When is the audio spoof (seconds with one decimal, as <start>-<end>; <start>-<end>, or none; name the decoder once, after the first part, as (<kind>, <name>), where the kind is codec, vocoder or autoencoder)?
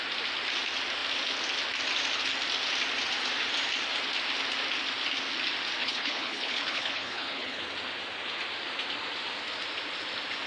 5.8-7.7 (codec, HILCodec)